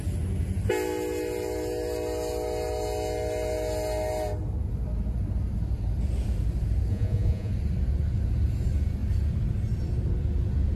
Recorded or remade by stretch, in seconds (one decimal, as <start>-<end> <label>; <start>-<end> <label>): 0.0-6.9 recorded; 6.9-7.5 remade; 7.5-10.8 recorded